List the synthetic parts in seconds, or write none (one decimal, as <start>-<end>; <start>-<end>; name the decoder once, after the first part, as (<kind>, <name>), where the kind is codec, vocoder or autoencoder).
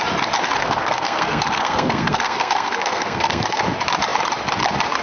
0.6-3.6 (codec, SNAC)